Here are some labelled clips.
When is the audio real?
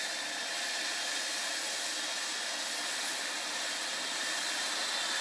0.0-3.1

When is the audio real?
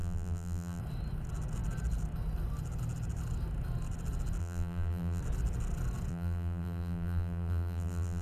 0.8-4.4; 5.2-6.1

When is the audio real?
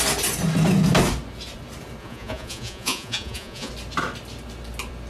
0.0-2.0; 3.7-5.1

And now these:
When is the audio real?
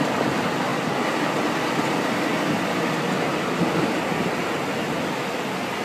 0.0-5.8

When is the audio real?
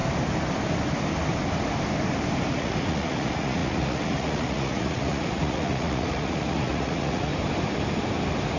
0.0-2.5; 7.3-8.6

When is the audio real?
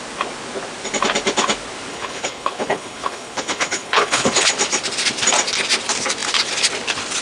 0.0-1.9; 4.5-7.2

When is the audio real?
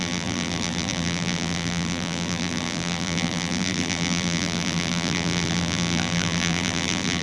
none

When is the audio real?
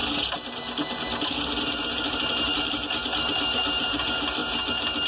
0.0-5.1